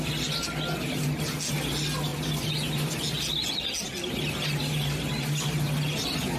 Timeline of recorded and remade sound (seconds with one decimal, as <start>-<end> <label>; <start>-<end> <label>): 0.0-6.4 recorded